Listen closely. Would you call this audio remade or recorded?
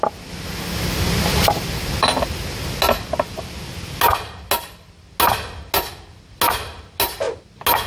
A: recorded